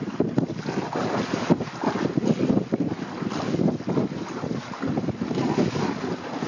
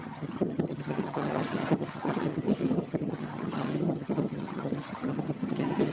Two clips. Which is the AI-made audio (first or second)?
second